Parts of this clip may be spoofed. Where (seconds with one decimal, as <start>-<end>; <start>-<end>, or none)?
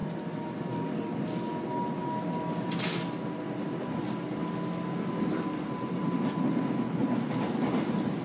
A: none